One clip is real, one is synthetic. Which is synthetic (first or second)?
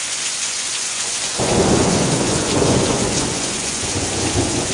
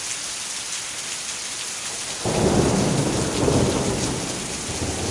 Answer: first